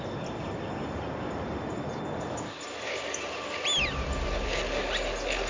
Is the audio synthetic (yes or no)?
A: no